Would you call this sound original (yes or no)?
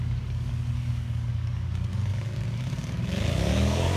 no